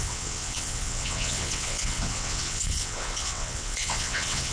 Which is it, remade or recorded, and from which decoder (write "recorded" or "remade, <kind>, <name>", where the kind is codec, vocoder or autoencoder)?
remade, vocoder, WaveNeXt